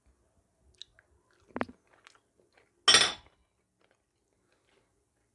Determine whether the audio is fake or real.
real